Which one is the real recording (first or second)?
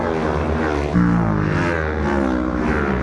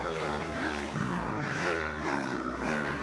first